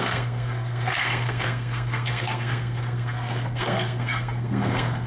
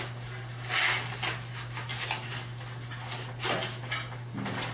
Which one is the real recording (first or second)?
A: second